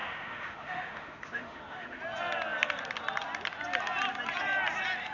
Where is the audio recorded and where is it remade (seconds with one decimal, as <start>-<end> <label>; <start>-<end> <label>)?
0.0-2.0 remade; 2.0-5.1 recorded